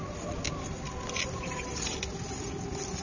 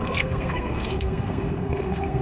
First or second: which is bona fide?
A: first